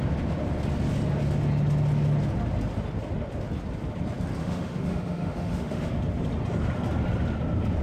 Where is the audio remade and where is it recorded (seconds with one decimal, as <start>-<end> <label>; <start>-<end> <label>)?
0.0-4.4 recorded; 4.4-6.0 remade; 6.0-7.8 recorded